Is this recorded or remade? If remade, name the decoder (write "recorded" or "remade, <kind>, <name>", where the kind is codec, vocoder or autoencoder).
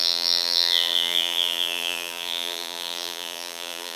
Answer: remade, vocoder, BigVGAN v2